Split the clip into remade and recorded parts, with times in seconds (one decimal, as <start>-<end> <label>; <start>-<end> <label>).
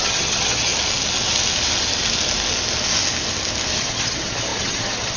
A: 0.0-0.7 remade; 0.7-3.8 recorded; 3.8-5.2 remade